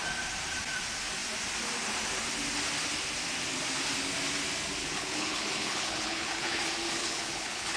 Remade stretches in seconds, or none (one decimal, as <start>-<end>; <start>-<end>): 4.8-6.6; 7.0-7.8